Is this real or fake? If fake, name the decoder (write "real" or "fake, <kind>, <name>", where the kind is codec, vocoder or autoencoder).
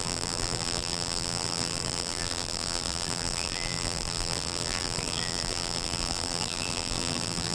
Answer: fake, vocoder, BigVGAN v2